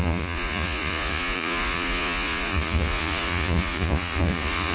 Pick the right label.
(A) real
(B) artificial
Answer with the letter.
B